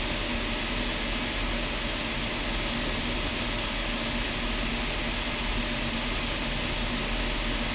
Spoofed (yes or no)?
no